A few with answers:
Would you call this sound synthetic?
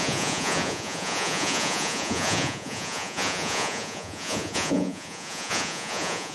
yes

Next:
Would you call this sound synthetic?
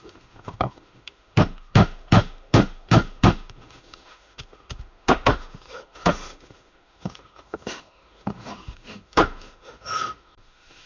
yes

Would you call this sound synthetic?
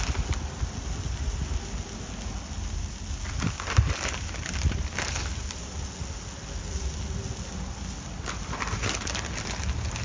no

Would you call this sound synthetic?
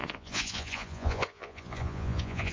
yes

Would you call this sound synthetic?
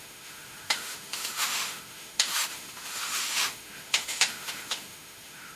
yes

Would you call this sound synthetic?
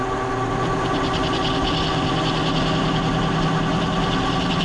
no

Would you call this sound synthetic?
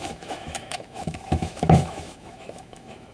yes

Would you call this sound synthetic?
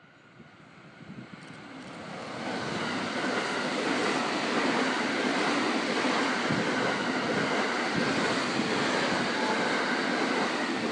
no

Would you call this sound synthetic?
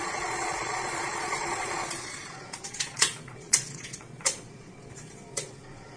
yes